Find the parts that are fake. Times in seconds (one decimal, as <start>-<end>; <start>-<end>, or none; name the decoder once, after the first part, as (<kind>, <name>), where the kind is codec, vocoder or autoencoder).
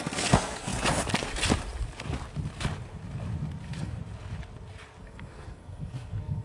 0.0-0.7 (codec, SNAC); 3.6-4.0; 5.0-6.4